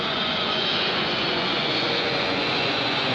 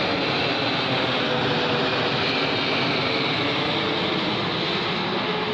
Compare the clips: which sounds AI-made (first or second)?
first